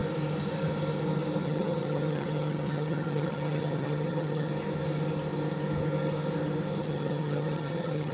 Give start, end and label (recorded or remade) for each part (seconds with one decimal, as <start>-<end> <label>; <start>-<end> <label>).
0.0-1.4 recorded; 1.4-4.5 remade; 4.5-6.8 recorded; 6.8-8.1 remade